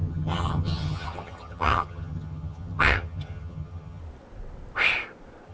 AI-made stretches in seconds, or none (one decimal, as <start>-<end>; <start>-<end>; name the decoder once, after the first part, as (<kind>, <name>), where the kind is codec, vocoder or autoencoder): 0.0-4.0 (vocoder, HiFi-GAN)